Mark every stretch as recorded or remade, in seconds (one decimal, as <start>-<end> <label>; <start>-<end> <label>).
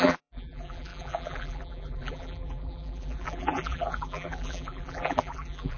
0.0-5.8 remade